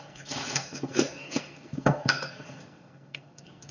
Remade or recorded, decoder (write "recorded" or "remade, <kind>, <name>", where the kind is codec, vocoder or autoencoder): remade, codec, SNAC